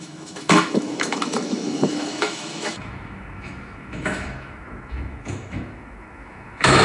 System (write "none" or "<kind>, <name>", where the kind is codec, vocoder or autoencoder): autoencoder, DAC-VAE